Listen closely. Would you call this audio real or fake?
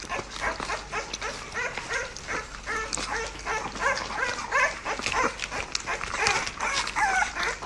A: real